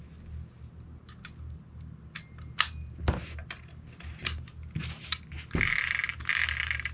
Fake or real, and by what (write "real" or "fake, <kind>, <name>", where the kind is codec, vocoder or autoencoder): real